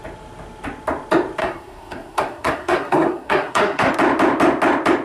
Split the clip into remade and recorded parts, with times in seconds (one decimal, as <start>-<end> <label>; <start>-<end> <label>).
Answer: 0.0-1.4 recorded; 1.4-3.9 remade; 3.9-5.0 recorded

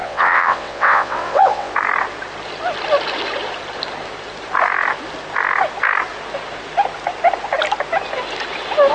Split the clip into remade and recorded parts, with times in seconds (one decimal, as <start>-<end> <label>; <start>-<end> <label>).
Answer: 0.0-1.7 remade; 1.7-8.9 recorded

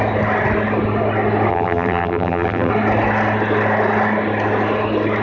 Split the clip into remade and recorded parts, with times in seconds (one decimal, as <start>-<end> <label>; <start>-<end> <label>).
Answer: 0.0-1.5 recorded; 1.5-2.7 remade; 2.7-5.2 recorded